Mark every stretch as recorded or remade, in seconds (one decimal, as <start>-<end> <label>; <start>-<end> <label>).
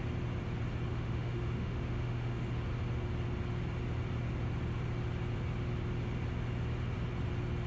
0.0-0.9 recorded; 0.9-2.5 remade; 2.5-7.7 recorded